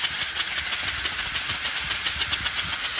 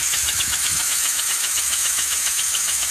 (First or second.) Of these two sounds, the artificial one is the second